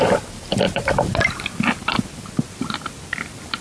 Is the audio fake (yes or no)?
no